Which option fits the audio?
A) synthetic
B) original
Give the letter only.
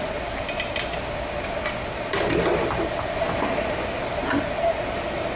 B